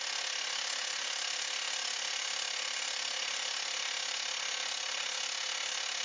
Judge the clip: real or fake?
real